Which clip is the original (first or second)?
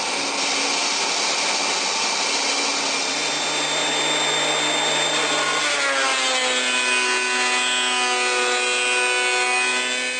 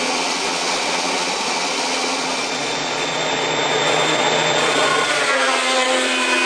first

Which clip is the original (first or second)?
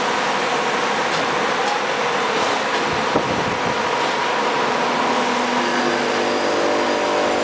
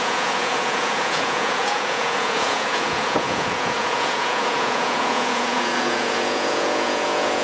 first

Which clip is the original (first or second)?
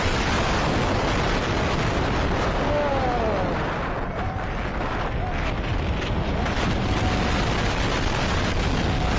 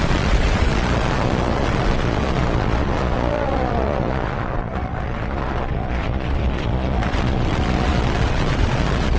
first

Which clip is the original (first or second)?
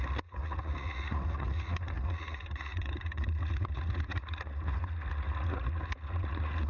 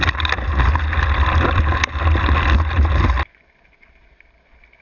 second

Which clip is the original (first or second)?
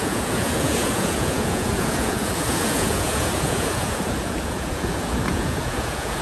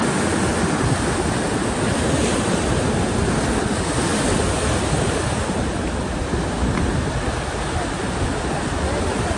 second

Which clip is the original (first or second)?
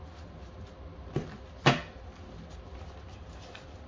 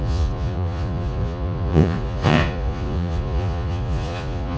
first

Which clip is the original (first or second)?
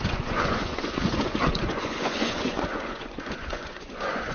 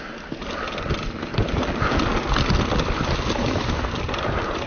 second